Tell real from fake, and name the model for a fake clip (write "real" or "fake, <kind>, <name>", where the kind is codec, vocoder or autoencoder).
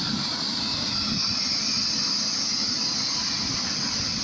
real